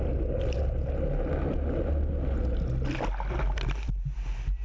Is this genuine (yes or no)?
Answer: yes